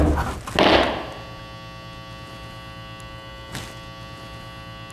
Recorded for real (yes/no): yes